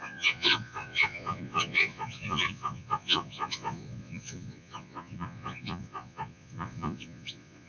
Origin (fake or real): fake